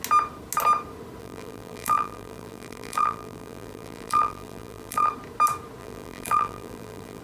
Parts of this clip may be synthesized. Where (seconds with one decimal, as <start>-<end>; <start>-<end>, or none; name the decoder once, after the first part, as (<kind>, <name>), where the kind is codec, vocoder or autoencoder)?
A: 1.2-5.1 (vocoder, BigVGAN v2); 5.8-7.2